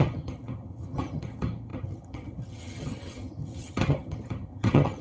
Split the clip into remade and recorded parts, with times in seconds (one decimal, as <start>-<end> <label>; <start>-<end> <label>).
0.0-5.0 remade